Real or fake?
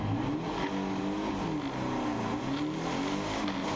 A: real